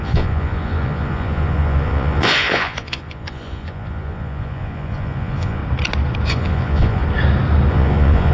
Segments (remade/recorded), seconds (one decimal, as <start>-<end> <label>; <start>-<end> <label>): 0.0-5.6 remade; 5.6-6.3 recorded; 6.3-7.0 remade; 7.0-7.7 recorded; 7.7-8.3 remade